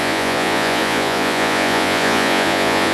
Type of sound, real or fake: fake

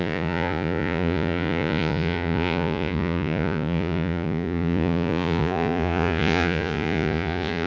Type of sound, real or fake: fake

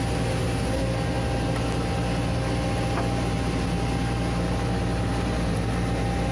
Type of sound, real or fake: real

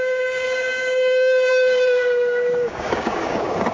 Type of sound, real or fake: fake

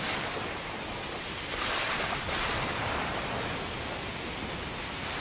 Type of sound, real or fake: real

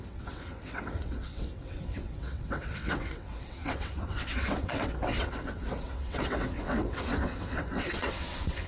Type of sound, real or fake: fake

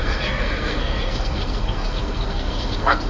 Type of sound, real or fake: fake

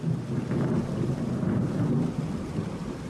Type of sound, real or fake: real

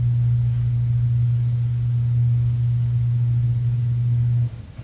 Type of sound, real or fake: real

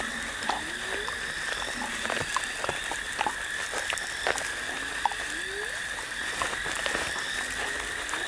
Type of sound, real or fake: real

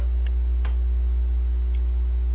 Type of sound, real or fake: real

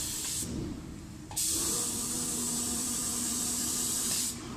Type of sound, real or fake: fake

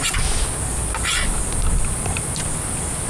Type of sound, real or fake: real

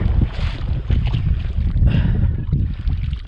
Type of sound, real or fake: real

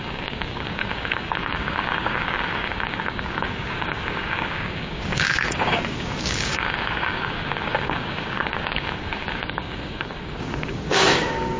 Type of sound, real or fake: fake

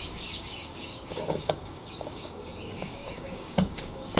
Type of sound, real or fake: fake